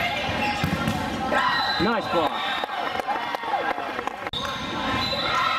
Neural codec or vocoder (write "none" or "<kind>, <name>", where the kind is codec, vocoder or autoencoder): none